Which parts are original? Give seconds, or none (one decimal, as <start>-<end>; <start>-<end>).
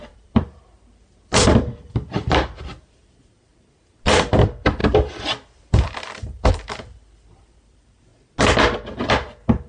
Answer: 3.5-4.3; 8.1-9.7